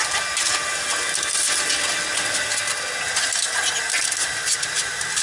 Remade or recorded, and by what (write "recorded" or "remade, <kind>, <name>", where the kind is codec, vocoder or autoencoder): recorded